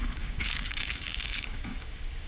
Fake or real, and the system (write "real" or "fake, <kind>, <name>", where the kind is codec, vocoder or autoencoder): fake, codec, DAC